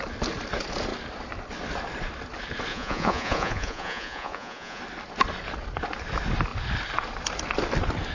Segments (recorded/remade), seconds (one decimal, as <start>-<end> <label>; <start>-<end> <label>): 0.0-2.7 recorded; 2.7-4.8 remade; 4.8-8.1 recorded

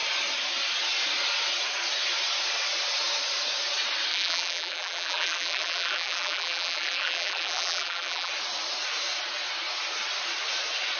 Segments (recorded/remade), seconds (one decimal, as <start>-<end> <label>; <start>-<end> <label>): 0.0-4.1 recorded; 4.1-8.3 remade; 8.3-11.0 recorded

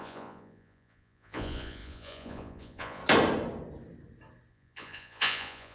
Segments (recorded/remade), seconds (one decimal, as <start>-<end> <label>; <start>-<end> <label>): 0.0-3.0 remade; 3.0-4.5 recorded; 4.5-5.7 remade

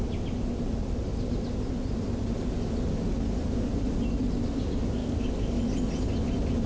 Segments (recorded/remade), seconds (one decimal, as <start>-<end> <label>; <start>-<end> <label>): 0.0-5.0 recorded; 5.0-5.6 remade; 5.6-6.7 recorded

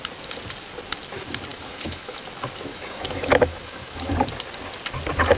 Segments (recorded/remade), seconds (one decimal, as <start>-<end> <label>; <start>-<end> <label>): 0.0-1.5 recorded; 1.5-2.2 remade; 2.2-2.7 recorded; 2.7-4.1 remade; 4.1-5.4 recorded

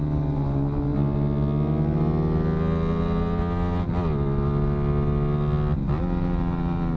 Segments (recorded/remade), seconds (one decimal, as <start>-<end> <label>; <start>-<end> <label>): 0.0-7.0 recorded

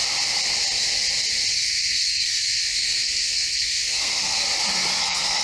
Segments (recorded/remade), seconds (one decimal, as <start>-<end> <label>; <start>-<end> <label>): 0.0-1.5 recorded; 1.5-4.4 remade; 4.4-5.0 recorded; 5.0-5.4 remade